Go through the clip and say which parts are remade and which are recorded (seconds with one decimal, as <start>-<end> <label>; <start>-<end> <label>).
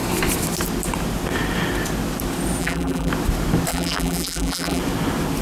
0.0-2.6 recorded; 2.6-3.1 remade; 3.1-3.7 recorded; 3.7-4.8 remade; 4.8-5.4 recorded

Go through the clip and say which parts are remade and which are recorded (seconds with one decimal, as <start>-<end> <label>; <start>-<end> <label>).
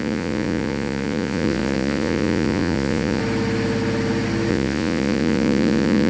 0.0-3.2 remade; 3.2-4.5 recorded; 4.5-6.1 remade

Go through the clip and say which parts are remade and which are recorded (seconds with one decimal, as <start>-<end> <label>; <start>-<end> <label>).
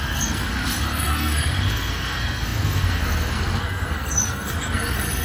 0.0-5.2 remade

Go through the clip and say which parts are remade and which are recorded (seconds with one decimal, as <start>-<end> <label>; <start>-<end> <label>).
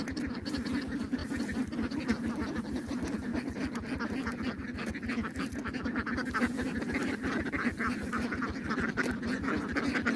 0.0-7.0 recorded; 7.0-10.2 remade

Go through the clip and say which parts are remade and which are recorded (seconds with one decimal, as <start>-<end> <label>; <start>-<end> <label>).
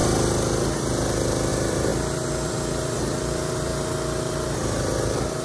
0.0-1.5 recorded; 1.5-3.7 remade; 3.7-4.2 recorded; 4.2-5.4 remade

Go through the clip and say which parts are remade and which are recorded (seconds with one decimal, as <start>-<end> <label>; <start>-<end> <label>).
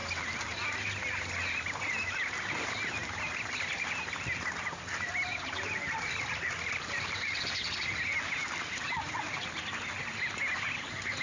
0.0-2.3 remade; 2.3-3.0 recorded; 3.0-7.8 remade; 7.8-8.4 recorded; 8.4-9.1 remade; 9.1-11.2 recorded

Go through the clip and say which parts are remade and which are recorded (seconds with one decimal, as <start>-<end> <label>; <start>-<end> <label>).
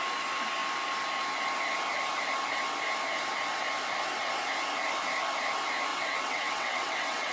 0.0-5.9 recorded; 5.9-7.3 remade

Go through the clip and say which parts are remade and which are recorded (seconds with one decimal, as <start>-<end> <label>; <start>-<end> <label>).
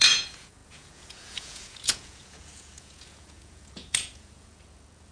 0.0-5.1 remade